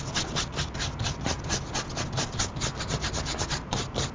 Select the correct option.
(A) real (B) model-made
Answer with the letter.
A